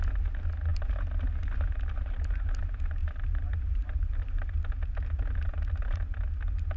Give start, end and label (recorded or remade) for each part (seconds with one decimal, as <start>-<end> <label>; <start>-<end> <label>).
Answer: 0.0-3.0 recorded; 3.0-4.7 remade; 4.7-6.8 recorded